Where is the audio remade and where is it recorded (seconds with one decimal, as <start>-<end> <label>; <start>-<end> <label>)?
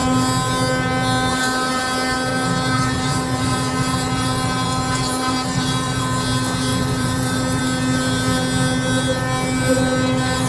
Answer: 0.0-2.3 recorded; 2.3-6.0 remade; 6.0-6.7 recorded; 6.7-7.6 remade; 7.6-10.5 recorded